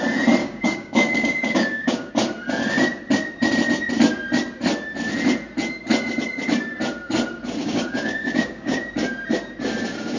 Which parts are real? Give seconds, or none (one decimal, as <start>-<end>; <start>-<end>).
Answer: 0.0-0.4; 2.1-7.6; 8.8-10.2